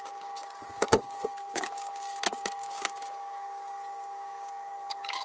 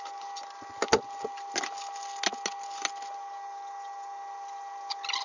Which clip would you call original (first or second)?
second